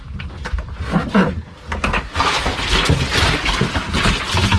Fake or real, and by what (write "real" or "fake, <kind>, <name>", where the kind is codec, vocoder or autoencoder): real